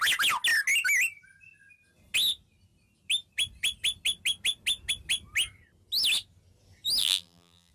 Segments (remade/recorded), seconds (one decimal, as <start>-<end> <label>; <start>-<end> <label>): 0.0-7.0 recorded; 7.0-7.7 remade